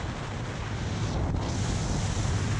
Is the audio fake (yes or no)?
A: no